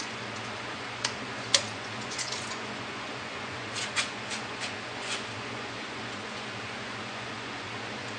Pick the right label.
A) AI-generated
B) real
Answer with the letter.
A